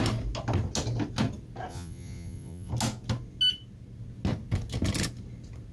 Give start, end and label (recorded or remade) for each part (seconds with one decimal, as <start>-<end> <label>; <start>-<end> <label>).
0.0-1.7 recorded; 1.7-2.7 remade; 2.7-5.7 recorded